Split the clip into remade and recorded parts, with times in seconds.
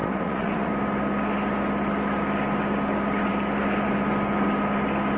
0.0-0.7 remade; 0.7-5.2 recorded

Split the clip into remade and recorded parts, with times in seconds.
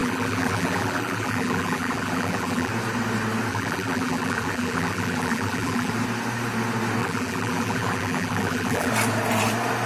0.0-2.7 remade; 2.7-3.5 recorded; 3.5-5.9 remade; 5.9-7.0 recorded; 7.0-8.9 remade; 8.9-9.9 recorded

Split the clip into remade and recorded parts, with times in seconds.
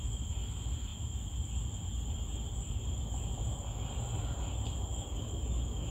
0.0-4.9 recorded; 4.9-5.9 remade